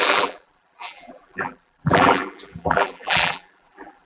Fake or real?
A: fake